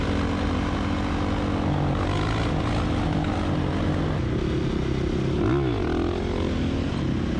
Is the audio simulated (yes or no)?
no